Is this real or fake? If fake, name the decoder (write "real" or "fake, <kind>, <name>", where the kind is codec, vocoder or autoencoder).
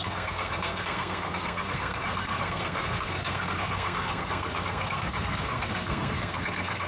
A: fake, codec, SNAC